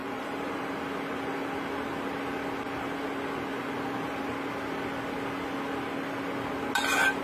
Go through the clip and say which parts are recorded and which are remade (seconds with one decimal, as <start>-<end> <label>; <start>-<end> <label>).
0.0-0.6 remade; 0.6-7.2 recorded